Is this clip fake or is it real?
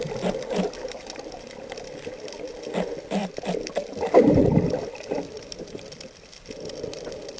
real